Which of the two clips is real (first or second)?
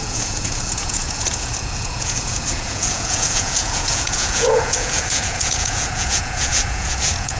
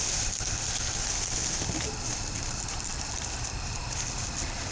second